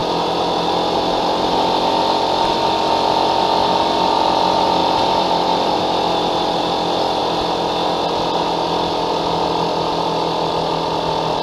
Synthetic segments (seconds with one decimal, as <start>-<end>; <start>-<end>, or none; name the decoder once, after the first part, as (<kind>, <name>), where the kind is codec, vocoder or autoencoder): 4.8-5.8 (vocoder, BigVGAN v2)